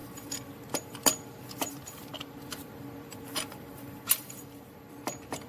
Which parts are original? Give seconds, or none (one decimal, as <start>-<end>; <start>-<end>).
none